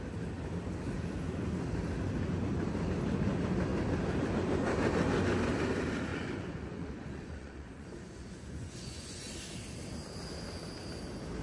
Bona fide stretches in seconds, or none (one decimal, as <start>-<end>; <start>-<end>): 0.0-6.1; 9.3-11.4